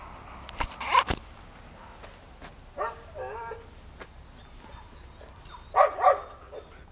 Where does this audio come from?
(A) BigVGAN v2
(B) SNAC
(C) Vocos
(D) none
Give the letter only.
D